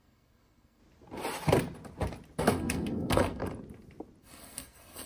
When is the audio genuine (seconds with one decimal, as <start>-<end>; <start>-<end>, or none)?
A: 0.8-2.4; 3.4-4.2